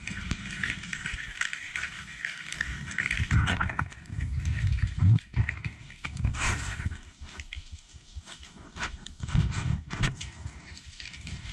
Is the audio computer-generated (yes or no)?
yes